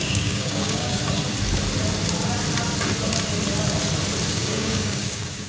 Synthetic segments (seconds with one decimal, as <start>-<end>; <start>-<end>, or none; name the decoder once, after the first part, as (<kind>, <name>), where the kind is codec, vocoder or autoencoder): 0.0-1.0 (codec, DAC); 4.3-5.5